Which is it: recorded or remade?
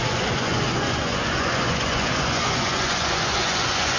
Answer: remade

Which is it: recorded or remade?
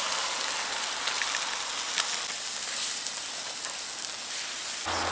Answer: recorded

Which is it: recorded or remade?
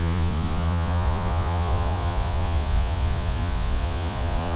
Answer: remade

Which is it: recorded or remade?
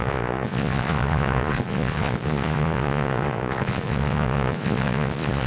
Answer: remade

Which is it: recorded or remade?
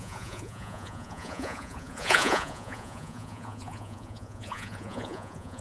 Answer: remade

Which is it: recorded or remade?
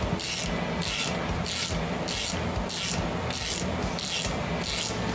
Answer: recorded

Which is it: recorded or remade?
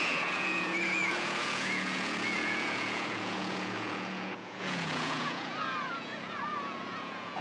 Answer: remade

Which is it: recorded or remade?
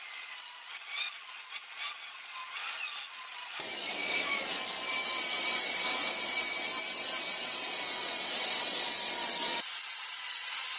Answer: remade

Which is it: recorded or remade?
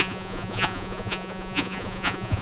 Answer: remade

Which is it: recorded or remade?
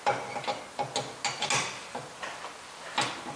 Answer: recorded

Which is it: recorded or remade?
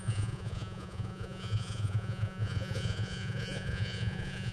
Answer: remade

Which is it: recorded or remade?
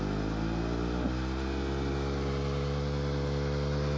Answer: recorded